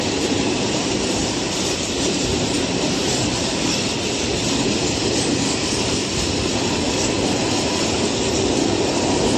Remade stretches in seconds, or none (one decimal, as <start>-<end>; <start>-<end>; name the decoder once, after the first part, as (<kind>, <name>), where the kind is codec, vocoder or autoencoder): 0.0-9.4 (vocoder, BigVGAN v2)